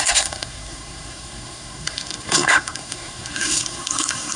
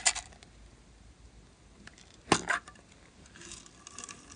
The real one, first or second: second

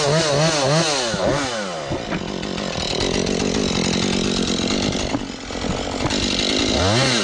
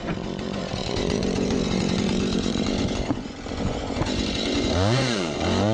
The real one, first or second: first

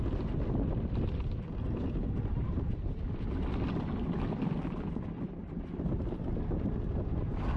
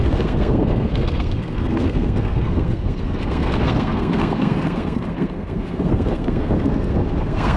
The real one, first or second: first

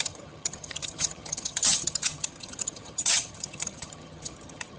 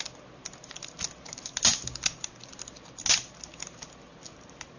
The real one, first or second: second